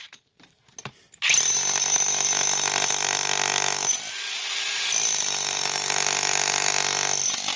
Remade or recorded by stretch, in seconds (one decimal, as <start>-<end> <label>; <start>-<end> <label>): 0.0-5.6 recorded; 5.6-6.7 remade; 6.7-7.6 recorded

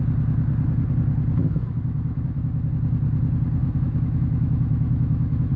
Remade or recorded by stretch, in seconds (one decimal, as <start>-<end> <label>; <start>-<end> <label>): 0.0-1.4 recorded; 1.4-2.7 remade; 2.7-3.6 recorded; 3.6-5.6 remade

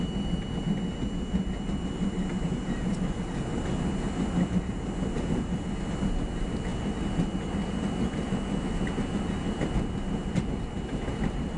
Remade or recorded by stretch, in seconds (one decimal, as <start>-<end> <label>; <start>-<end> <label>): 0.0-11.6 recorded

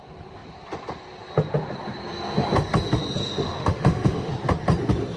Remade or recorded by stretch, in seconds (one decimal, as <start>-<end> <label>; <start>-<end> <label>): 0.0-3.2 recorded; 3.2-4.3 remade; 4.3-5.2 recorded